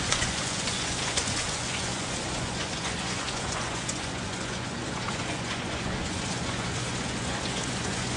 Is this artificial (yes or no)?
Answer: yes